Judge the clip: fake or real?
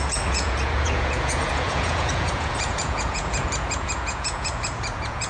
fake